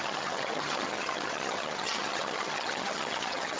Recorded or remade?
remade